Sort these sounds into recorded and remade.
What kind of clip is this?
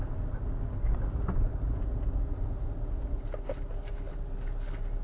recorded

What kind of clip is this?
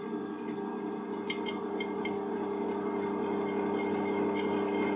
recorded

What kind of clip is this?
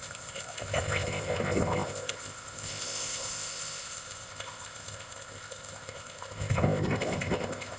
remade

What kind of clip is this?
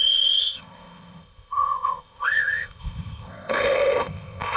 remade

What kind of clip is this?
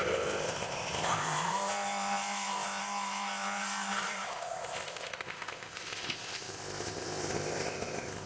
remade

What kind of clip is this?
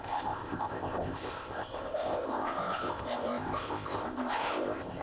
remade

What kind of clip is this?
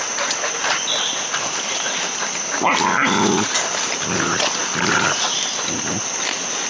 recorded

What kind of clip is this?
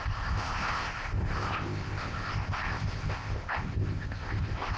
remade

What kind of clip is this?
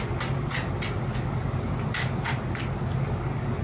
recorded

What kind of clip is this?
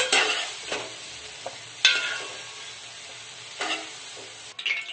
recorded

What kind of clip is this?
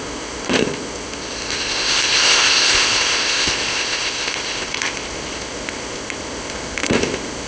remade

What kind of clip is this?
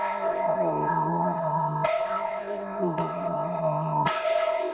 remade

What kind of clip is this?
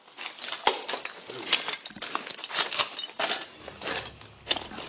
recorded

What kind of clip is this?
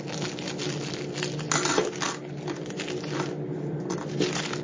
recorded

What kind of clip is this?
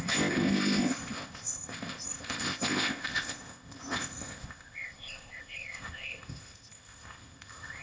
remade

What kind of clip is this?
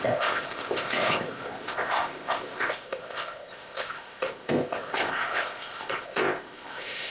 remade